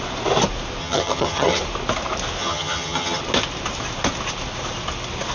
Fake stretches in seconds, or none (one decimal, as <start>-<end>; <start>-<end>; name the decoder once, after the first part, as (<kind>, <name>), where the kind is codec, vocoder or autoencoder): 0.8-1.6 (vocoder, HiFi-GAN); 2.4-3.2